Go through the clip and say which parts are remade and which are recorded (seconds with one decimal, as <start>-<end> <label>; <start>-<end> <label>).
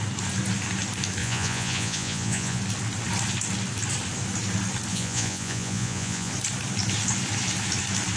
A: 0.0-1.2 recorded; 1.2-2.6 remade; 2.6-4.9 recorded; 4.9-6.3 remade; 6.3-8.2 recorded